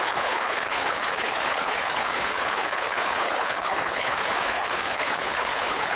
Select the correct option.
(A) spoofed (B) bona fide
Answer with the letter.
A